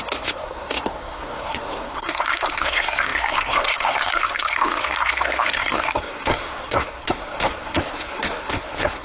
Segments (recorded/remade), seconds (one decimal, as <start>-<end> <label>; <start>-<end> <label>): 0.0-9.0 remade